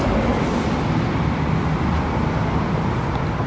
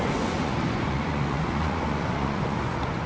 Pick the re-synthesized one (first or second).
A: second